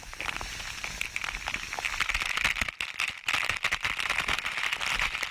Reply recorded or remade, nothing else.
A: recorded